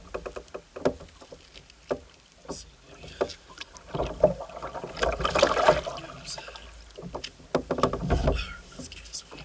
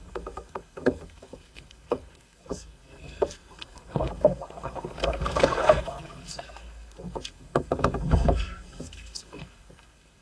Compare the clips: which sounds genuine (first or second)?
first